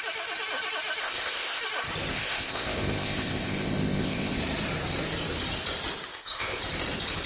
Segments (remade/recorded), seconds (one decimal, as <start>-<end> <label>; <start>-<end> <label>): 0.0-1.0 recorded; 1.0-1.6 remade; 1.6-2.1 recorded; 2.1-4.4 remade; 4.4-6.1 recorded; 6.1-6.6 remade; 6.6-7.3 recorded